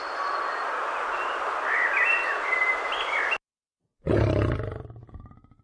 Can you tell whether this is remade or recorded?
recorded